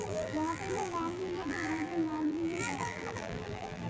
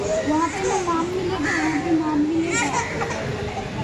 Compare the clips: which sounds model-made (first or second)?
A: first